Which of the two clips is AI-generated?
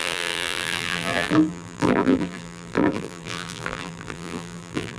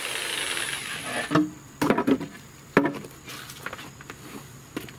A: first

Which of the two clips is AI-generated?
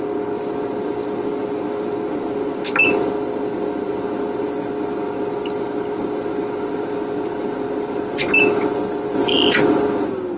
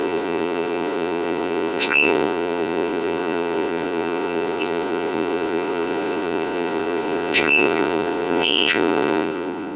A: second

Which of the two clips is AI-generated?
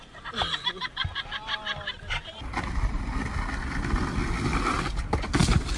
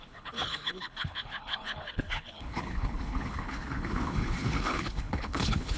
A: second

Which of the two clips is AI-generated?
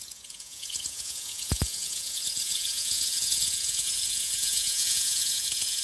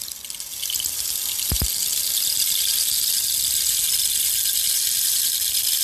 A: first